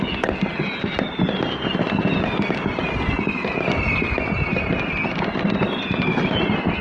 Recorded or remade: recorded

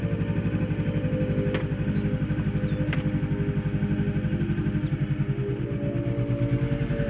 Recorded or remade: recorded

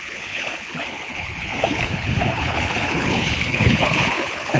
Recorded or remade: remade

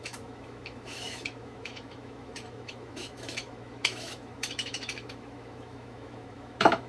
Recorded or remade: remade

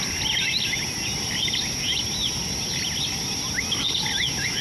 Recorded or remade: recorded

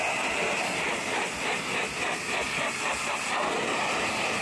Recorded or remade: recorded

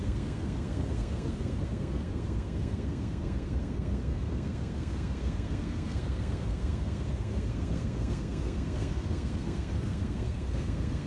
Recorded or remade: remade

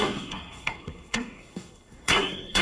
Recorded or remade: remade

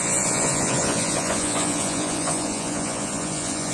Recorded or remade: remade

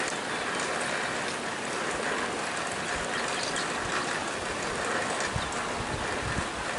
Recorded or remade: recorded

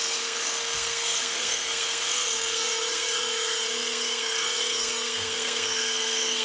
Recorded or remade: remade